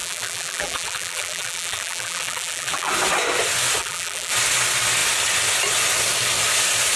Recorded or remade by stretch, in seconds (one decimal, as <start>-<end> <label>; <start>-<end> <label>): 0.0-2.9 remade; 2.9-3.8 recorded; 3.8-4.3 remade; 4.3-7.0 recorded